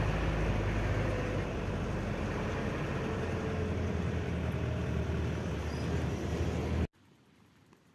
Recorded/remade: recorded